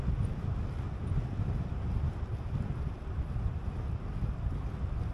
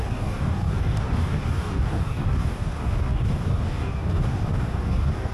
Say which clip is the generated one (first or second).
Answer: second